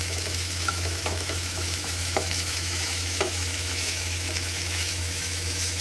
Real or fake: fake